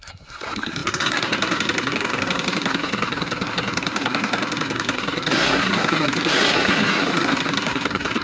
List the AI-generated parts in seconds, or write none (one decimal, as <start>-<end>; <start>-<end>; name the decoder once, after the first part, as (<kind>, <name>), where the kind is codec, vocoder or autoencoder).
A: 0.0-8.2 (codec, SNAC)